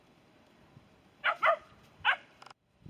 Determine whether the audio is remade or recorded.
recorded